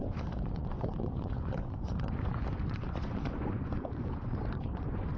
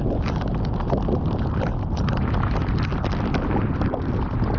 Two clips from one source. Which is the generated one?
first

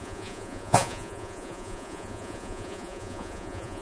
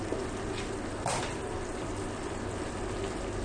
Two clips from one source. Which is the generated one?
first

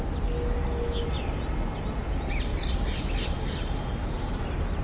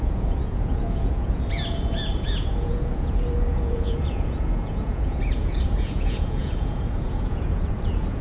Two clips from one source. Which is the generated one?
second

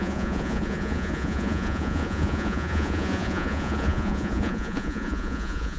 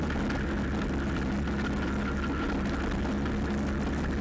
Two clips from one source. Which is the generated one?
first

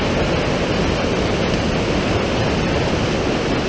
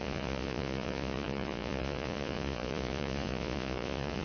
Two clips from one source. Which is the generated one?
second